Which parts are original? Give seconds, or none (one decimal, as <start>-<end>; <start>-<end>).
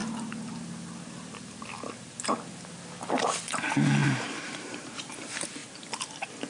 0.0-4.0; 5.0-6.5